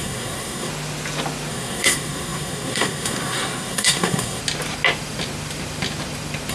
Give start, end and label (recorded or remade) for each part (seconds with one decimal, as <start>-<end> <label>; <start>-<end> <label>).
0.0-0.7 remade; 0.7-1.5 recorded; 1.5-4.4 remade; 4.4-6.5 recorded